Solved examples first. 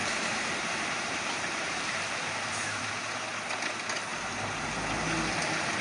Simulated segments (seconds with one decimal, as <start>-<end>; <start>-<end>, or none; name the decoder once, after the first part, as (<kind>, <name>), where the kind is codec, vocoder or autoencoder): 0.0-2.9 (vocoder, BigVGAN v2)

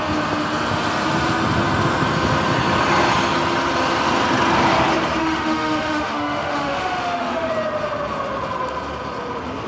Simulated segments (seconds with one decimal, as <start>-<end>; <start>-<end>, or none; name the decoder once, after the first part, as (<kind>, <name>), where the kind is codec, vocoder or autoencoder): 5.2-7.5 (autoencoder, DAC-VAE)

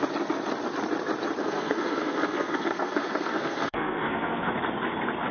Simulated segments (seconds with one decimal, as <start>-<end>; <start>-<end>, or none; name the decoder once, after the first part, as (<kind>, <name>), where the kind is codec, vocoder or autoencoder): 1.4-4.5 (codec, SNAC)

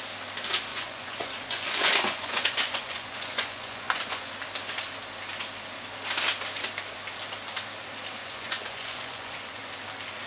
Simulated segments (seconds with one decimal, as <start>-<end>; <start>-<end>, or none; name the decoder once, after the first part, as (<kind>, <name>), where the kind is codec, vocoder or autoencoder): 0.7-4.3 (vocoder, Vocos); 8.2-9.6

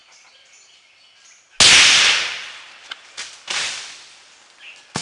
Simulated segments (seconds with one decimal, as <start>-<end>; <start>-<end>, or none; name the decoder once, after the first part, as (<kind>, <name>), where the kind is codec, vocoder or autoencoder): none

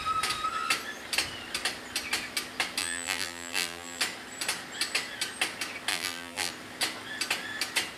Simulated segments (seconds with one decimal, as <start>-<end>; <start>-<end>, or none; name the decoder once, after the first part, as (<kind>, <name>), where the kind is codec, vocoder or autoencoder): 2.8-4.0 (vocoder, BigVGAN v2); 5.9-6.5

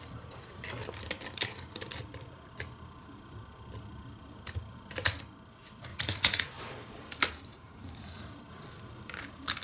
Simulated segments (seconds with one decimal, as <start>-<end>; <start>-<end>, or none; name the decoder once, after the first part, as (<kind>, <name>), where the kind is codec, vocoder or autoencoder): 5.9-6.5 (vocoder, Vocos); 7.5-8.2

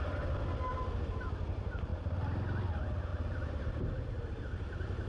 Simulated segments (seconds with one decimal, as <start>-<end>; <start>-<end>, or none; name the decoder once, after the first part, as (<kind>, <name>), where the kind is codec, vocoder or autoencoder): 3.1-3.7 (vocoder, BigVGAN v2)